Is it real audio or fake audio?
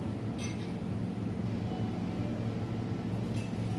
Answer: real